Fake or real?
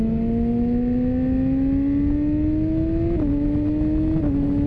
real